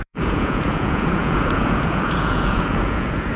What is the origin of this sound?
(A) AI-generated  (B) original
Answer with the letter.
A